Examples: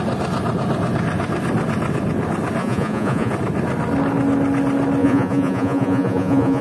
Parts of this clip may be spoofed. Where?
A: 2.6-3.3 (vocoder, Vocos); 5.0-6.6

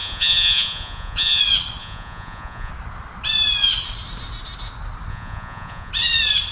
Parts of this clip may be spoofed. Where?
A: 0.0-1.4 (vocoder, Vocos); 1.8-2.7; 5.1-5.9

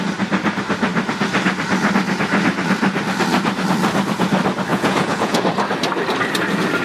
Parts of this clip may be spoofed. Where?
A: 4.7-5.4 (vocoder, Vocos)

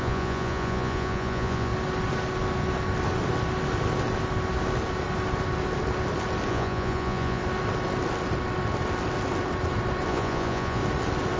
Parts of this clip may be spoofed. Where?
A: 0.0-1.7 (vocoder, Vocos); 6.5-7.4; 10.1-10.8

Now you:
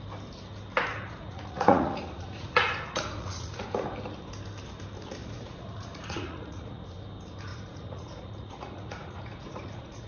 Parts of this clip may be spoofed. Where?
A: 0.9-3.6 (vocoder, Vocos); 5.2-6.8; 7.5-10.1